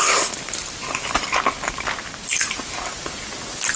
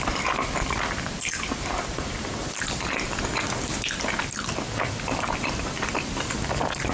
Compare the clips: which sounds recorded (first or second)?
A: first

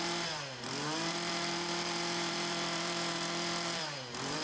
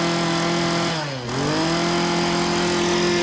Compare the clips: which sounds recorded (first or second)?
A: second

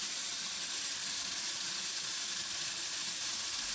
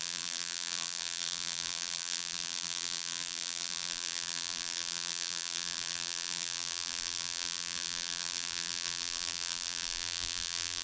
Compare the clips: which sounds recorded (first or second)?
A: first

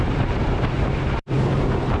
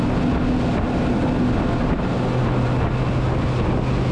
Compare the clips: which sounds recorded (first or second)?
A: second